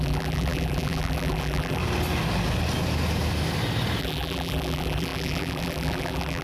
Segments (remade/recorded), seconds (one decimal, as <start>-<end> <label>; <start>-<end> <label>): 0.0-1.8 remade; 1.8-4.0 recorded; 4.0-6.4 remade